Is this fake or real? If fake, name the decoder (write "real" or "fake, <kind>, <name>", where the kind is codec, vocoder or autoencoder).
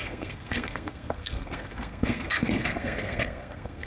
fake, codec, SNAC